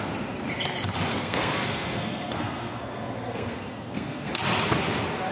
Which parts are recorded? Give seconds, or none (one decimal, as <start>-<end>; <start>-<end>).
0.0-1.1; 4.3-5.3